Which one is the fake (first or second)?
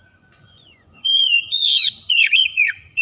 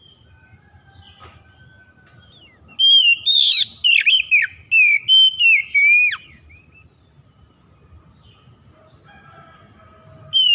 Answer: first